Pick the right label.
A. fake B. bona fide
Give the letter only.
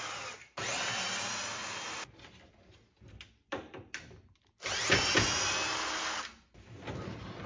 B